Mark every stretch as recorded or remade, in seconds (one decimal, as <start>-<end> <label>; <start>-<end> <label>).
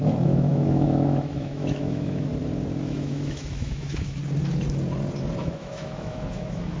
0.0-2.3 remade; 2.3-2.8 recorded; 2.8-4.2 remade; 4.2-5.4 recorded; 5.4-6.8 remade